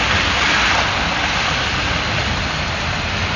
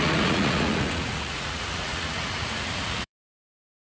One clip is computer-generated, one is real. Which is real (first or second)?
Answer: first